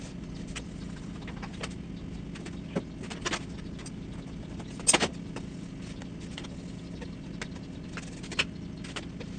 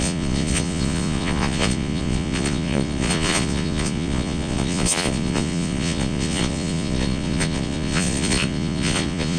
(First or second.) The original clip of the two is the first